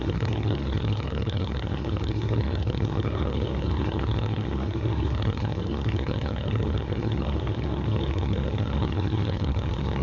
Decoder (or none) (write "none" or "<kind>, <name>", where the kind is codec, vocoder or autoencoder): codec, SNAC